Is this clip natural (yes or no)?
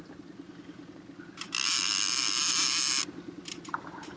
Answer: yes